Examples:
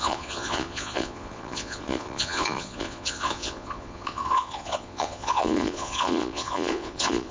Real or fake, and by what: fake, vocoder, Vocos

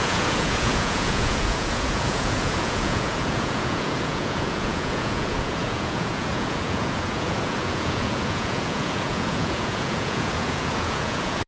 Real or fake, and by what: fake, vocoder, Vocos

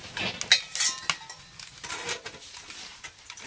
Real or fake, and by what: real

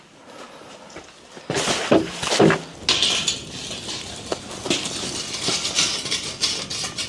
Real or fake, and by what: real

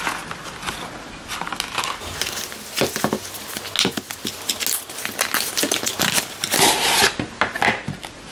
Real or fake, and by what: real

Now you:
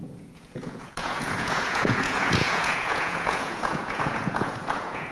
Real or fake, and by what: fake, vocoder, Vocos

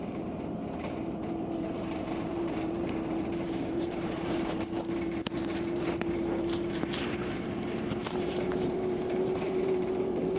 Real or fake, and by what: fake, vocoder, BigVGAN v2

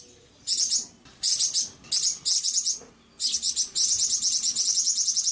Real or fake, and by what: real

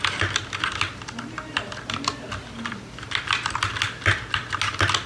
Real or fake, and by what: real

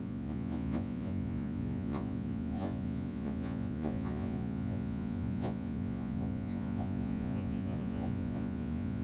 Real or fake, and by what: fake, vocoder, Vocos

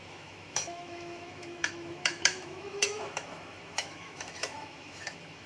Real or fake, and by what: fake, autoencoder, DAC-VAE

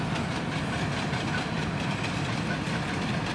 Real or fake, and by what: real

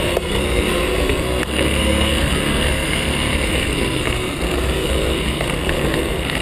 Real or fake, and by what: fake, codec, SNAC